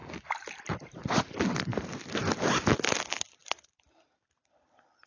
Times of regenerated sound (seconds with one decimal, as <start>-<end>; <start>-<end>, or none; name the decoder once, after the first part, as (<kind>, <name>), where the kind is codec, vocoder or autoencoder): none